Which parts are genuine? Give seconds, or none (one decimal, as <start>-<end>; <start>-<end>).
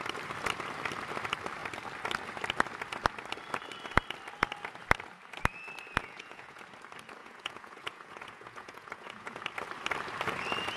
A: 0.0-6.0; 6.6-7.2; 9.4-10.8